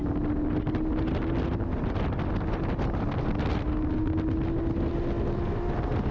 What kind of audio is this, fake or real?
real